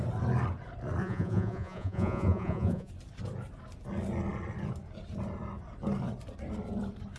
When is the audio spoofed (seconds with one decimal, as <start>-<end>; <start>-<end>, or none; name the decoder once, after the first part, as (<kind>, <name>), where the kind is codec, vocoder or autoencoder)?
1.0-2.9 (vocoder, Vocos)